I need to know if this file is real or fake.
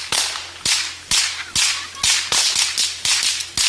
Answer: real